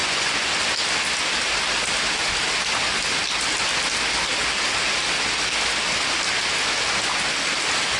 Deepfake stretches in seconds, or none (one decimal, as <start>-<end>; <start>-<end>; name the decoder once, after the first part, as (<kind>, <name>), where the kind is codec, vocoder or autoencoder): 0.0-0.5 (vocoder, Vocos)